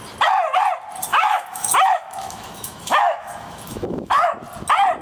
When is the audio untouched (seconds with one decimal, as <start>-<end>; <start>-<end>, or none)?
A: 0.0-1.1; 4.1-5.0